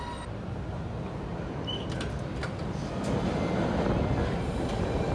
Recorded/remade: recorded